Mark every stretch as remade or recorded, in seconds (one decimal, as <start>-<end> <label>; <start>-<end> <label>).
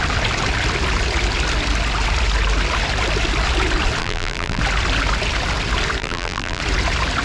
0.0-4.0 recorded; 4.0-4.6 remade; 4.6-6.0 recorded; 6.0-6.6 remade; 6.6-7.2 recorded